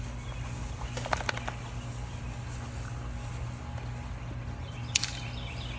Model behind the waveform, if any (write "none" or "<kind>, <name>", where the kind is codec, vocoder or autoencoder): none